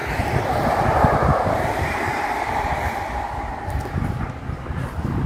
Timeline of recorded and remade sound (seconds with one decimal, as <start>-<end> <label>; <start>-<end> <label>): 0.0-3.2 remade; 3.2-5.3 recorded